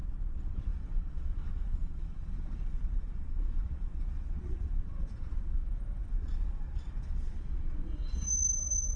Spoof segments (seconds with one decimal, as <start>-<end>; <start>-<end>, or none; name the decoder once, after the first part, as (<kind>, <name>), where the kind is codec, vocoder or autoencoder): 0.0-5.6 (vocoder, Vocos); 6.1-9.0